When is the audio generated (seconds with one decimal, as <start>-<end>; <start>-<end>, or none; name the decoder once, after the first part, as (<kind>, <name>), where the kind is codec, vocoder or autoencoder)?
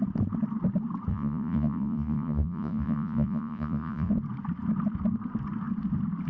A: 1.1-4.1 (vocoder, Vocos)